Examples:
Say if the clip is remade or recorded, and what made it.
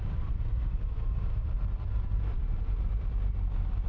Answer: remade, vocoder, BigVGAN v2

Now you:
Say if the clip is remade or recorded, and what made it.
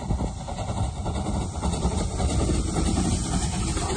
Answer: recorded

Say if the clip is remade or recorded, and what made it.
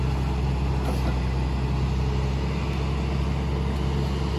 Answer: recorded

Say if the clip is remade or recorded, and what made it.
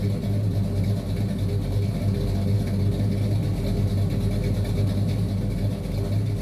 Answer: recorded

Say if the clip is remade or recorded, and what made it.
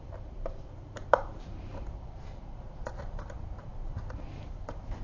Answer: remade, vocoder, BigVGAN v2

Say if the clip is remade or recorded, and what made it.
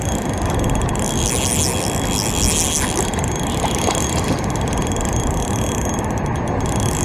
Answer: recorded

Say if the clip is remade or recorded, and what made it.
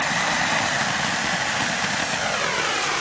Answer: recorded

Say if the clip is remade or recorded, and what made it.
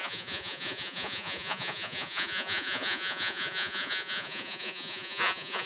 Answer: remade, vocoder, Vocos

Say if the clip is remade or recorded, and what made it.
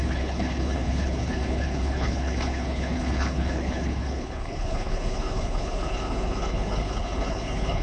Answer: remade, codec, HILCodec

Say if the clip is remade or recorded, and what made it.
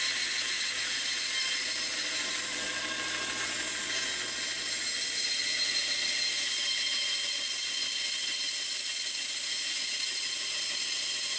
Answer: recorded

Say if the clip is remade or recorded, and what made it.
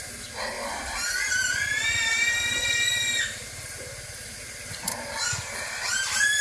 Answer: recorded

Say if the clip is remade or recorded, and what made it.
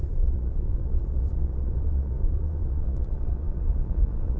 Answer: remade, vocoder, Vocos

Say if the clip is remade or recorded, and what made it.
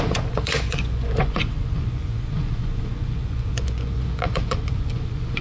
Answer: remade, vocoder, Vocos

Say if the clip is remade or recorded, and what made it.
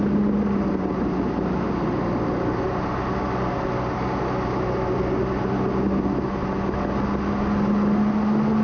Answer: recorded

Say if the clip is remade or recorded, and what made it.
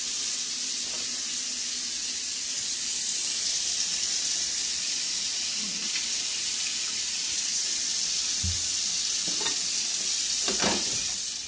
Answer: remade, vocoder, BigVGAN v2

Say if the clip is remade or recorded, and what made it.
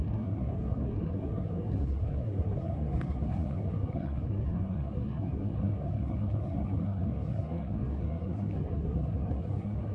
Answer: remade, codec, SNAC